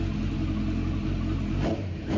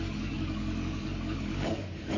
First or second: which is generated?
second